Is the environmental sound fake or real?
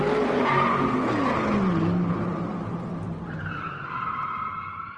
real